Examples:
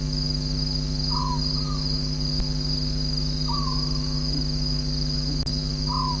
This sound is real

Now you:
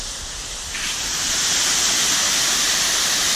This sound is real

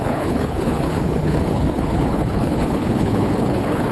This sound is fake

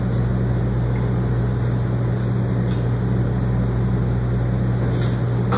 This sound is real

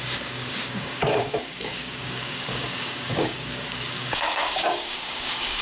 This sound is fake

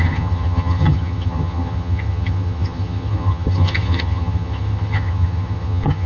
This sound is fake